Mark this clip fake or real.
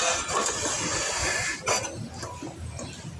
real